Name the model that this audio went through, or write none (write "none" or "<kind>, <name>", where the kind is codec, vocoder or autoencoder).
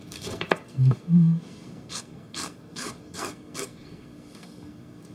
codec, SNAC